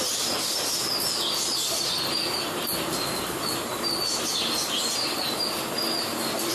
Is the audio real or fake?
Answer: real